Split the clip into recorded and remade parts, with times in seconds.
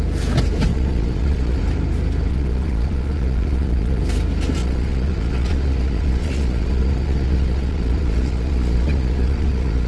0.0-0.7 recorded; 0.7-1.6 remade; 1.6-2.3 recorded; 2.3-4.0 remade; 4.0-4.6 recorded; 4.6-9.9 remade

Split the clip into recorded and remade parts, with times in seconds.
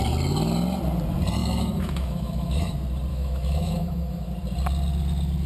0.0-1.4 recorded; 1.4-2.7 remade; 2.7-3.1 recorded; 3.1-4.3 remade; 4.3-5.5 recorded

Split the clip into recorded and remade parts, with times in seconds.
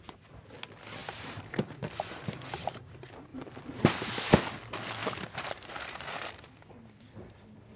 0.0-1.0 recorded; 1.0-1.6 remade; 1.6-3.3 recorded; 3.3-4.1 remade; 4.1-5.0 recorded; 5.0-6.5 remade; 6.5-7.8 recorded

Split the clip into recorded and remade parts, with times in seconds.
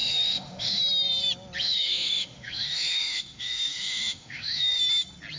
0.0-0.8 remade; 0.8-1.6 recorded; 1.6-4.8 remade; 4.8-5.4 recorded